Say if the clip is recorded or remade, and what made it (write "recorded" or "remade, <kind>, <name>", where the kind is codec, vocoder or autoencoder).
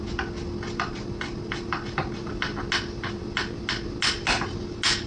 recorded